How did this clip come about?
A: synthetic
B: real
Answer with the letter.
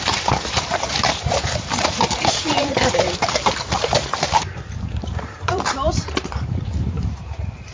A